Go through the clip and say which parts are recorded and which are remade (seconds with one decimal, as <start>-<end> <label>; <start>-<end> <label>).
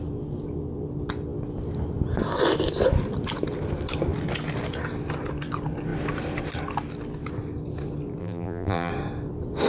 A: 0.0-8.2 recorded; 8.2-8.9 remade; 8.9-9.7 recorded